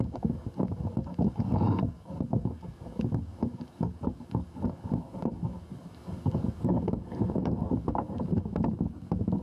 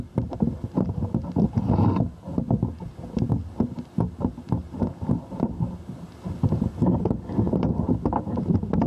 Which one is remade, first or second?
first